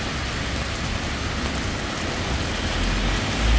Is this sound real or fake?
real